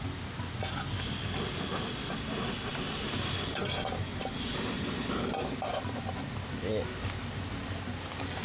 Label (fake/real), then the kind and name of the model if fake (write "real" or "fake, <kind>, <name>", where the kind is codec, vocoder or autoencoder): real